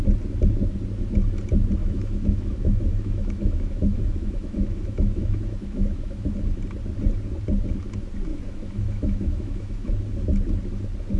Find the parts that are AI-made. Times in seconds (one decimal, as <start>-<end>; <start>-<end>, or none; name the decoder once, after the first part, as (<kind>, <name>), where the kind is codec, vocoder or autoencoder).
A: 1.8-6.3 (autoencoder, DAC-VAE); 8.3-9.9